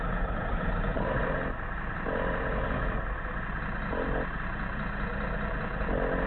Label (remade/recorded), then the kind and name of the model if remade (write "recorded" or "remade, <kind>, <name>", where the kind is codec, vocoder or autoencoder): recorded